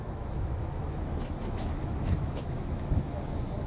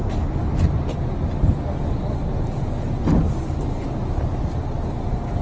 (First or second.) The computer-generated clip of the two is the first